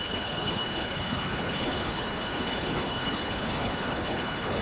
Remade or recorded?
remade